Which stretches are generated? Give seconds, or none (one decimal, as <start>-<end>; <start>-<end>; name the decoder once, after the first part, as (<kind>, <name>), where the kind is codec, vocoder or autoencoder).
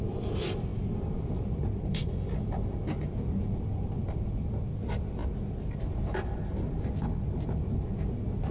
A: 0.7-4.3 (vocoder, BigVGAN v2)